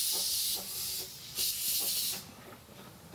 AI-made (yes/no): no